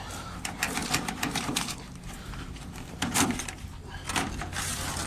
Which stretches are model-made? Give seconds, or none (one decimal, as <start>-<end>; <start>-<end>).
none